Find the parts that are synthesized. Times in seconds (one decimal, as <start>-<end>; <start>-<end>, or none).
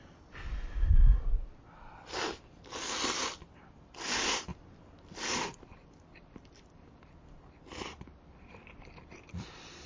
none